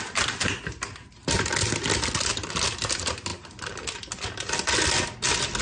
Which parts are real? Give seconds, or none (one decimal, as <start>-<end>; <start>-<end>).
0.0-5.6